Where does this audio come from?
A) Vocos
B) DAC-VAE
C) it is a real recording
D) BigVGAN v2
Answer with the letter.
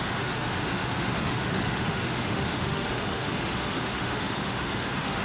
B